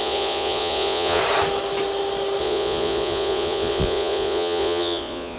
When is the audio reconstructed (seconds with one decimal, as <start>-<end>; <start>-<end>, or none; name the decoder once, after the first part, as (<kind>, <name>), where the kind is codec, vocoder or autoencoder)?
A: 0.0-1.2 (vocoder, Vocos); 2.4-5.4